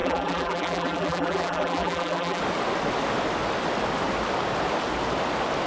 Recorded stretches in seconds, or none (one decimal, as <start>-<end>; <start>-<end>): 2.4-5.7